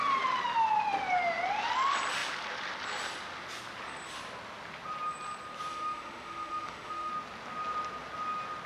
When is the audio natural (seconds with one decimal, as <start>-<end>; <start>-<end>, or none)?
0.0-5.7; 7.1-8.7